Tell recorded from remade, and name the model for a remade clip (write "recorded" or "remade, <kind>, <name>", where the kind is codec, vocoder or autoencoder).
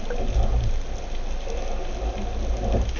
recorded